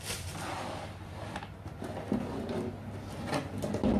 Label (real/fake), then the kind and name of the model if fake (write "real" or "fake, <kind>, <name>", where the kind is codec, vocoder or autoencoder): real